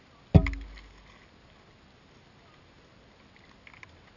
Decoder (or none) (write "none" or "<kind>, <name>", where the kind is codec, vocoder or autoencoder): none